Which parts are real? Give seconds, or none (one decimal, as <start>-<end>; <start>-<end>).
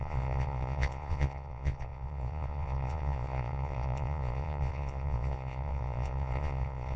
none